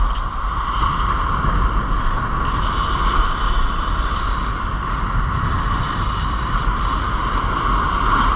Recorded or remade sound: recorded